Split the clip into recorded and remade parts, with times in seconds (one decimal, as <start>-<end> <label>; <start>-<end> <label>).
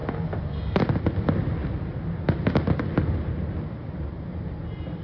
0.0-5.0 recorded